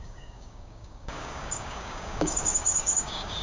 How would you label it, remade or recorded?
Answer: remade